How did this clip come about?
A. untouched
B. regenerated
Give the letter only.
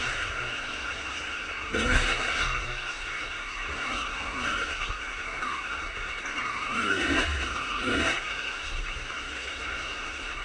B